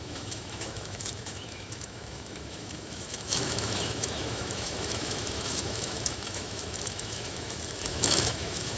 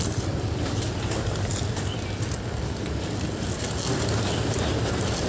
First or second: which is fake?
first